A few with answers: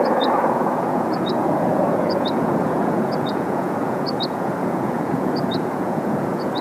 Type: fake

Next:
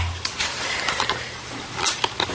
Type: real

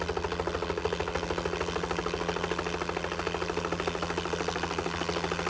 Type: real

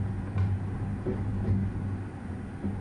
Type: real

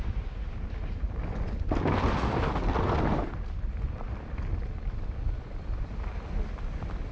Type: real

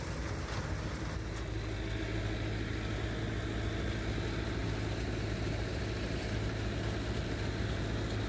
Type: real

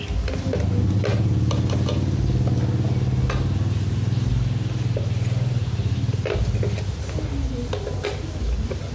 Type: real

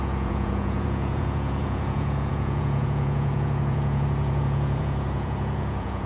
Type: fake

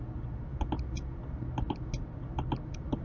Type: real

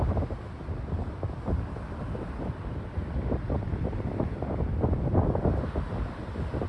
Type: real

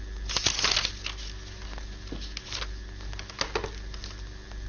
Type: real